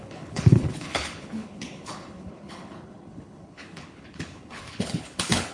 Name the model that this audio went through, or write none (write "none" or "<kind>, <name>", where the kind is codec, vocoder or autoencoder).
codec, HILCodec